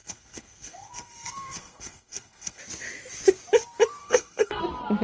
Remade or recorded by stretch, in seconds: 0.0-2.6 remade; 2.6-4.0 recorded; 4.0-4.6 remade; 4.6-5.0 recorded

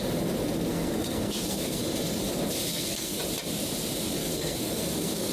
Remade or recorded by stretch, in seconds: 0.0-0.7 recorded; 0.7-1.8 remade; 1.8-2.7 recorded; 2.7-3.2 remade; 3.2-4.2 recorded; 4.2-5.3 remade

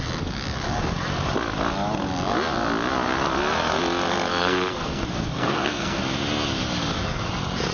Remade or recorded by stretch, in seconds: 0.0-4.4 recorded; 4.4-6.0 remade; 6.0-7.7 recorded

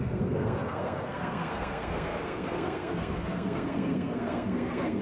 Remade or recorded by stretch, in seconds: 0.0-5.0 remade

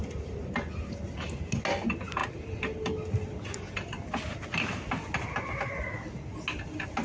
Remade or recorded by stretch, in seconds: 0.0-7.0 recorded

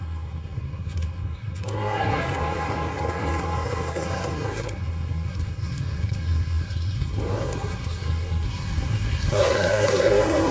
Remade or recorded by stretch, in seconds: 0.0-10.5 remade